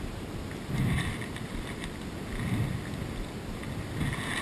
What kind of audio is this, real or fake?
real